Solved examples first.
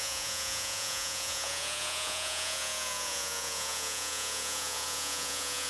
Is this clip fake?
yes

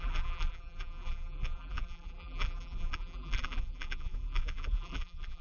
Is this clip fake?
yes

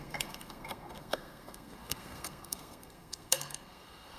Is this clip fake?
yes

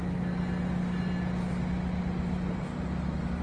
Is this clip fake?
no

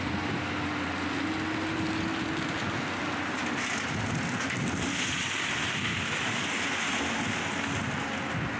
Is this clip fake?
no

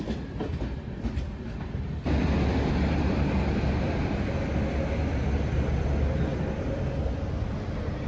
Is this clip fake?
no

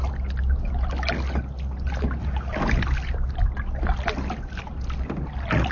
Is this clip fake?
no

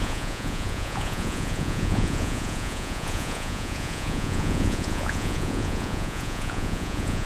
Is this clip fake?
yes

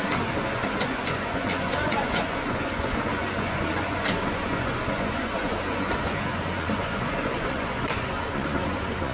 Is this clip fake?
yes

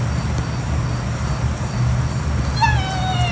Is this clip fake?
no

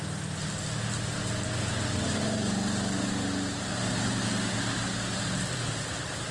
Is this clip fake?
no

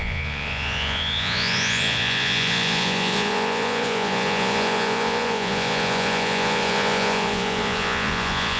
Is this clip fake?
yes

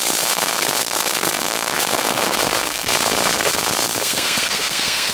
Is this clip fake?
yes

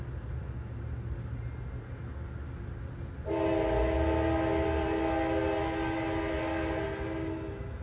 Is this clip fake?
no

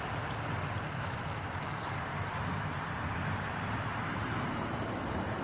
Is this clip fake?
yes